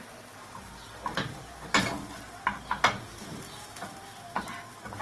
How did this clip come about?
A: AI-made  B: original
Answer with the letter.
A